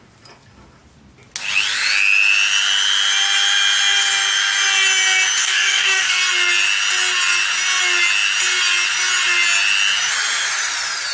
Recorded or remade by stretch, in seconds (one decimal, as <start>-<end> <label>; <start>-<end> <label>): 0.0-5.4 recorded; 5.4-6.2 remade; 6.2-11.1 recorded